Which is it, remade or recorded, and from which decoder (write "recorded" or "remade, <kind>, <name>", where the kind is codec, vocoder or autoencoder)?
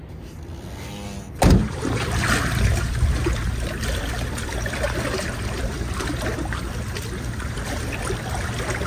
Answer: recorded